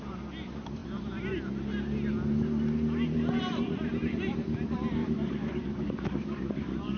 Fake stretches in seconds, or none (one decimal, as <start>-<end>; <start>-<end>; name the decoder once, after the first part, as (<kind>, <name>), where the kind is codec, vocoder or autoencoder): 5.0-7.0 (codec, DAC)